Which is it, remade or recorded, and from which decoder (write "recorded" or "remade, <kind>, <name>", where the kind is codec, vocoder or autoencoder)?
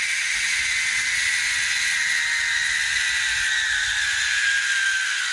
recorded